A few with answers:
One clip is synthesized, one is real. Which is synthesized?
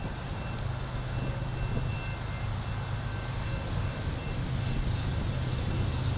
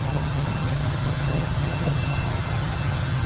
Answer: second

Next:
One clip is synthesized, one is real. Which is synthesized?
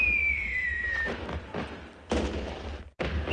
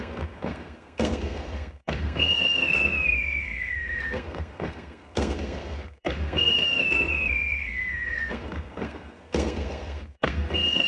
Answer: second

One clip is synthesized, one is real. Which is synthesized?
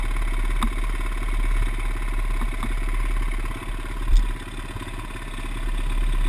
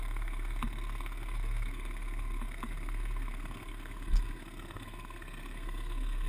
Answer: second